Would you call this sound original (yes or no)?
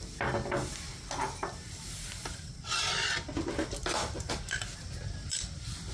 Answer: yes